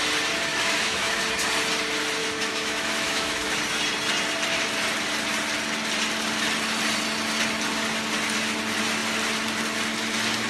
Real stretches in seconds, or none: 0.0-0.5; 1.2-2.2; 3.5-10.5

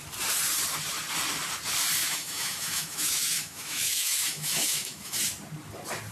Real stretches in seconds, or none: 0.0-2.0; 5.2-6.1

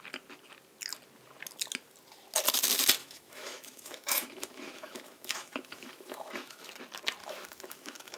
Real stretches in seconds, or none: 0.0-3.0; 6.7-7.2

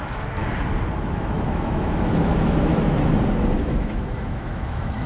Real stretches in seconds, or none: 0.4-1.0; 2.7-3.6

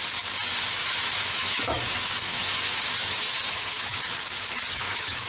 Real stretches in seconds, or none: 0.0-0.8; 4.0-4.7

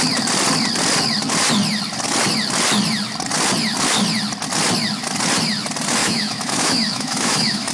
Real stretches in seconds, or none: 0.0-6.0

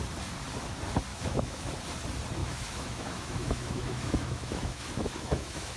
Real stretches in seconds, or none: 0.0-1.1; 1.7-2.4